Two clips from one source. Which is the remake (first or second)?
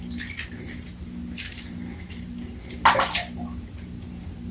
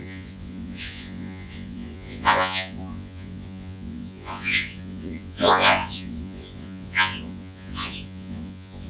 second